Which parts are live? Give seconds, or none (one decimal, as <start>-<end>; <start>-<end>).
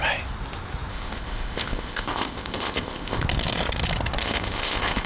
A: 0.0-0.9; 3.2-4.2